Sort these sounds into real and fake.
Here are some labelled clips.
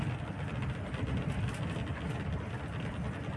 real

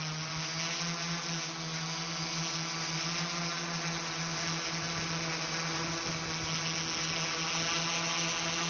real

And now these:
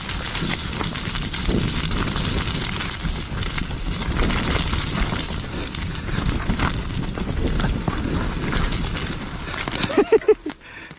real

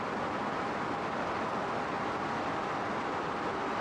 real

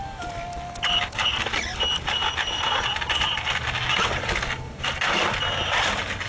real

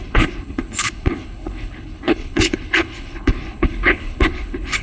fake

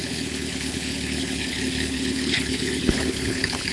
fake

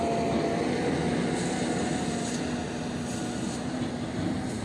real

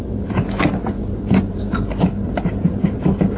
real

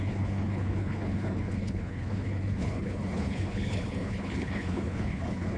fake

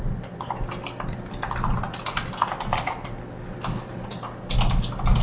real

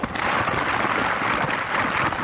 real